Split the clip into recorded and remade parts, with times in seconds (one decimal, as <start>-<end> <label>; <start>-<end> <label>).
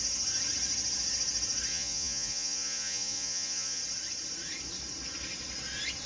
0.0-1.7 recorded; 1.7-3.8 remade; 3.8-6.1 recorded